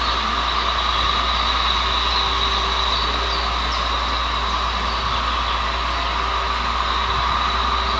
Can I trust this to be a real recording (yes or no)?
yes